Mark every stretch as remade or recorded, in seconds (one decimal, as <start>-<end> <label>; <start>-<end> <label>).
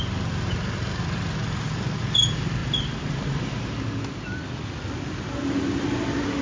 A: 0.0-2.6 recorded; 2.6-3.3 remade; 3.3-6.4 recorded